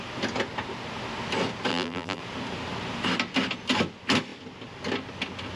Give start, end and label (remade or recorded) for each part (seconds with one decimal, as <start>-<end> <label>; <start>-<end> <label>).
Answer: 0.0-1.7 recorded; 1.7-2.2 remade; 2.2-5.6 recorded